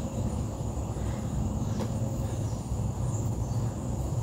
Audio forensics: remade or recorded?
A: recorded